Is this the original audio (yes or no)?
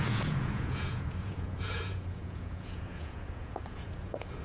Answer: no